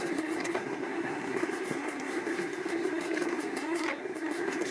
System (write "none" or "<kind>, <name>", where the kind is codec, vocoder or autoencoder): codec, SNAC